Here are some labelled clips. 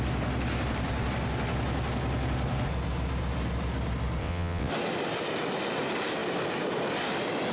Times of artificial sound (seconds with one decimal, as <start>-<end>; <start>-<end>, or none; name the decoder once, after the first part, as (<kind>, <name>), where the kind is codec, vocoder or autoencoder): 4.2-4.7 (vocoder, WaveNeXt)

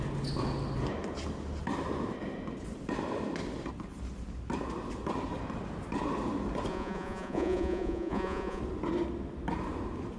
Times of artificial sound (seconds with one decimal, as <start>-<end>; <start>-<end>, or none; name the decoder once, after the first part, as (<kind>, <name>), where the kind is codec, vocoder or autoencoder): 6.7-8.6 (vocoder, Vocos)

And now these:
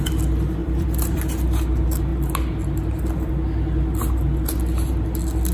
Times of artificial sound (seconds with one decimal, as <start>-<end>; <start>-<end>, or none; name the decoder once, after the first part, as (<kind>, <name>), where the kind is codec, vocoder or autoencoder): 0.6-1.2 (vocoder, BigVGAN v2)